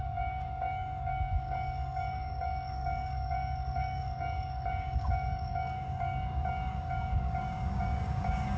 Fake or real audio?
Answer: fake